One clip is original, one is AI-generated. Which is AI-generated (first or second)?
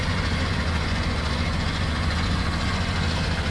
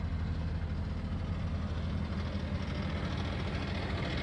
first